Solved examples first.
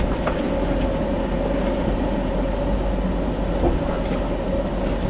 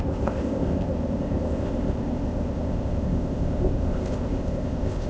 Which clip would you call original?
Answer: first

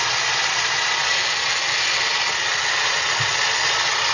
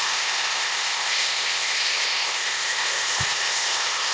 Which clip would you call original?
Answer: first